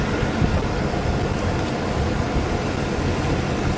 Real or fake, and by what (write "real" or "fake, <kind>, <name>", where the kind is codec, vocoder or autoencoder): real